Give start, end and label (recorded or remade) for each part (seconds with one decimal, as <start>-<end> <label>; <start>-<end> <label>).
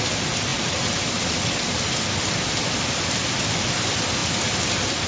0.0-5.1 recorded